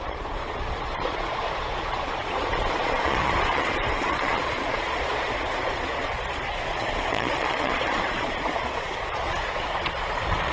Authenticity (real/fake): fake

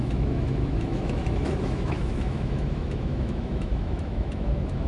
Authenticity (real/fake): fake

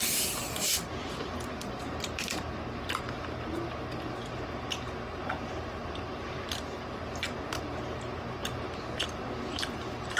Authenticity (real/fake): real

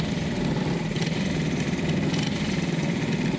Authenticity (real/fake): fake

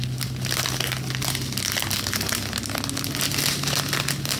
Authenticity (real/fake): real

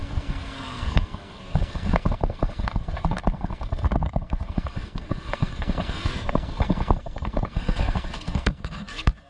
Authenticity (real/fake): fake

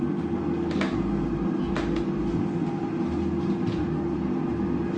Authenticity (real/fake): real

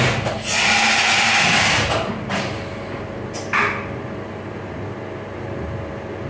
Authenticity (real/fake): real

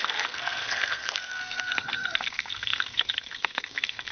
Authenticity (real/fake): fake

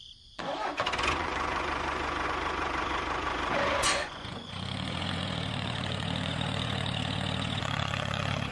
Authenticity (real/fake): fake